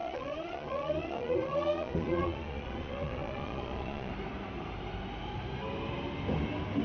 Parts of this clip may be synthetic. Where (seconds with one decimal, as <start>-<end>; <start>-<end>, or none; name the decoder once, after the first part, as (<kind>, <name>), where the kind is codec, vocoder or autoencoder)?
0.0-4.1 (vocoder, Vocos)